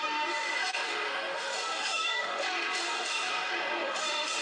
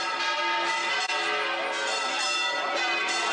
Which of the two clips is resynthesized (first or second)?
first